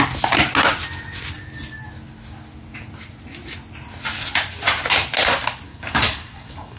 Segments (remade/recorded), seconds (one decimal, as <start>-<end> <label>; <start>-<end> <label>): 0.0-5.7 recorded; 5.7-6.8 remade